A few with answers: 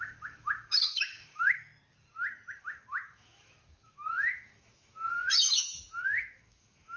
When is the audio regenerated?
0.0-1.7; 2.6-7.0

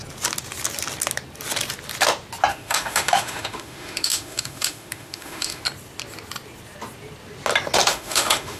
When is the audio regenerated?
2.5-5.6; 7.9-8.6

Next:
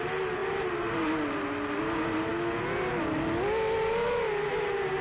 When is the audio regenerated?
none

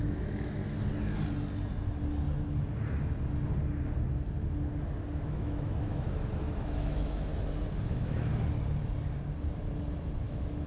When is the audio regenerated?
0.0-0.6; 5.3-7.3; 7.8-8.3; 10.2-10.7